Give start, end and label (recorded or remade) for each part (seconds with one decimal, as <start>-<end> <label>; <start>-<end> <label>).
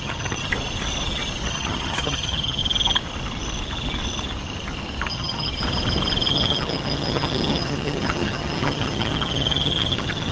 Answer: 0.0-0.5 remade; 0.5-1.5 recorded; 1.5-2.6 remade; 2.6-5.1 recorded; 5.1-5.5 remade; 5.5-6.3 recorded; 6.3-10.3 remade